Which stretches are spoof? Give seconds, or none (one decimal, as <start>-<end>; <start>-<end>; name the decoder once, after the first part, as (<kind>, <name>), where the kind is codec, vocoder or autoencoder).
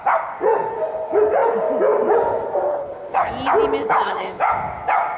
2.7-3.3 (codec, HILCodec); 3.8-4.4